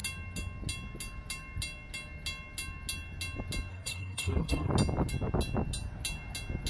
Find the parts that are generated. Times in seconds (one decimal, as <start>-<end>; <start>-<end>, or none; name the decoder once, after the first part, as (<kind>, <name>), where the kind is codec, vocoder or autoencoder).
3.7-4.7 (codec, SNAC)